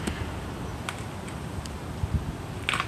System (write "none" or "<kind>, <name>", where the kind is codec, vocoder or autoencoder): none